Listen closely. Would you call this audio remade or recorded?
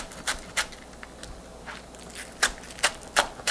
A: recorded